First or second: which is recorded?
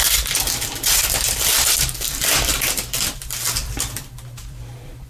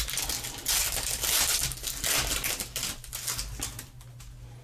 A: second